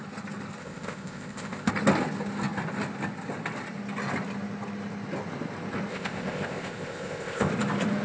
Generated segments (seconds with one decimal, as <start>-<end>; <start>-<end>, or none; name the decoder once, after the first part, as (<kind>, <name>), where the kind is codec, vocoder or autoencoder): 0.6-1.7 (codec, ZipCodec); 5.9-7.5